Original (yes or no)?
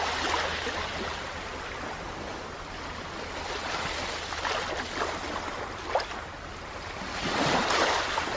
yes